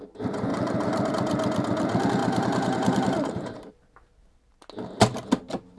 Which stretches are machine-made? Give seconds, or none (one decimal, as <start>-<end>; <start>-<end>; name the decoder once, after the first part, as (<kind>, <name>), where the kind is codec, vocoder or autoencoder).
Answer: 0.5-1.1 (vocoder, BigVGAN v2); 2.2-3.7